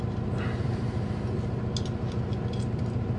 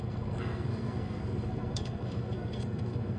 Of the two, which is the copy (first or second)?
second